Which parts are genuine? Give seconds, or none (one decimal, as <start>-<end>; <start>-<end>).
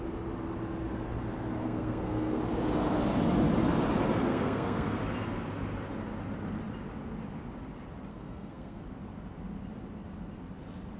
0.0-1.6; 2.4-4.3; 5.0-8.1; 8.8-11.0